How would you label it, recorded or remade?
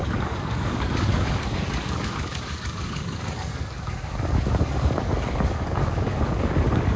remade